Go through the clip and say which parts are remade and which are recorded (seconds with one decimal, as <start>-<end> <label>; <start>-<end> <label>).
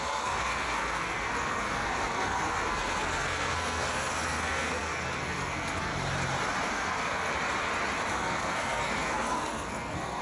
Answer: 0.0-5.9 remade; 5.9-6.7 recorded; 6.7-7.3 remade; 7.3-8.1 recorded; 8.1-10.2 remade